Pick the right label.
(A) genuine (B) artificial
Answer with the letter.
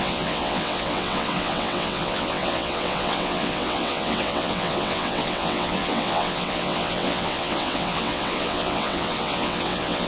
B